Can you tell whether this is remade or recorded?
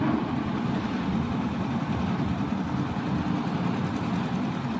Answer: recorded